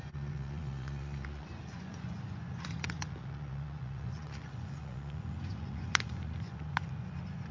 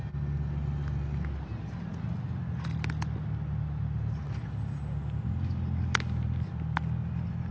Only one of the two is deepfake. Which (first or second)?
first